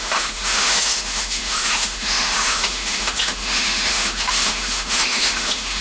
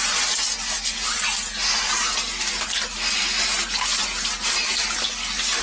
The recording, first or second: second